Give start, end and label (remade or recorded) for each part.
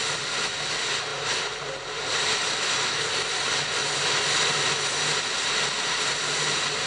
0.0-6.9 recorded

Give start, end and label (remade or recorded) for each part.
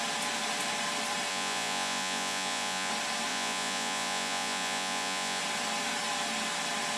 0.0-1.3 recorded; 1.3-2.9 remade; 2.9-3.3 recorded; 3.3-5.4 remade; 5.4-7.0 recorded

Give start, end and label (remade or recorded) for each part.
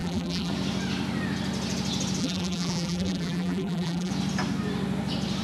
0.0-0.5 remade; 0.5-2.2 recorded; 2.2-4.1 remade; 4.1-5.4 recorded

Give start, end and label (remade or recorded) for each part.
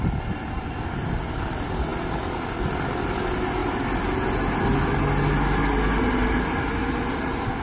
0.0-7.6 recorded